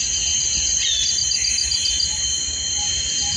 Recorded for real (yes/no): yes